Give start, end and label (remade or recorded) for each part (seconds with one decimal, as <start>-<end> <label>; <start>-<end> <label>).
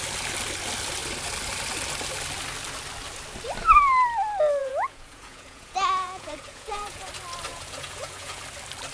0.0-4.6 recorded; 4.6-7.1 remade; 7.1-7.5 recorded; 7.5-8.4 remade; 8.4-8.9 recorded